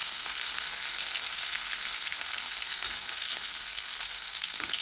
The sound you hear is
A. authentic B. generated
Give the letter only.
B